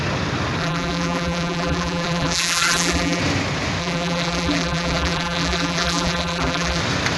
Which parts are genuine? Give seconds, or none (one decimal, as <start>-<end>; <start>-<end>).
0.0-0.6; 3.2-3.8; 6.8-7.2

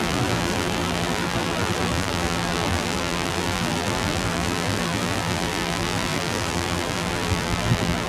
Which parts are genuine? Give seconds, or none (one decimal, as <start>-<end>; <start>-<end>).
none